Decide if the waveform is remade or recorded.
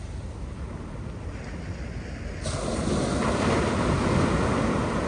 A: recorded